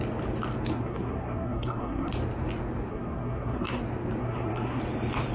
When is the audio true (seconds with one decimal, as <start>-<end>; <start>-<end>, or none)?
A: 0.0-0.7; 2.1-2.9; 3.8-4.2; 4.8-5.3